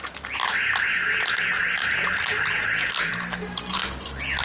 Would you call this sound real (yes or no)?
yes